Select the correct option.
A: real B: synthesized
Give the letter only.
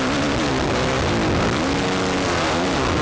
A